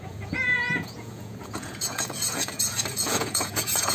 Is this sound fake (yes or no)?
yes